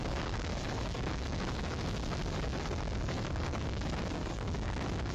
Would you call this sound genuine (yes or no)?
no